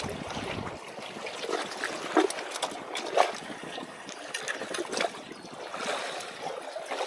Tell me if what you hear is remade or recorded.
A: recorded